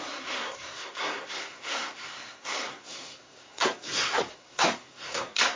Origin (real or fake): fake